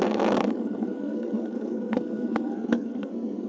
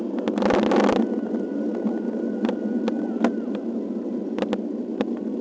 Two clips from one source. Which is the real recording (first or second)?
second